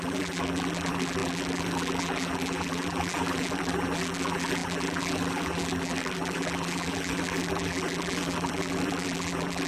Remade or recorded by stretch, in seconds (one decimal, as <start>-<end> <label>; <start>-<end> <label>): 0.0-9.7 remade